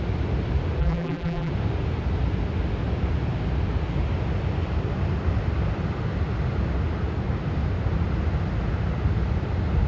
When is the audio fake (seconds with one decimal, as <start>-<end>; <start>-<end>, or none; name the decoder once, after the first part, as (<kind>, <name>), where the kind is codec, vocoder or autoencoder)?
0.8-1.5 (vocoder, BigVGAN v2)